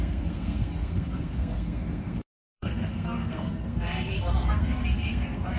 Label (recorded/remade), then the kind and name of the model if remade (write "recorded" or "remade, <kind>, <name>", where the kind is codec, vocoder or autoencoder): remade, codec, SNAC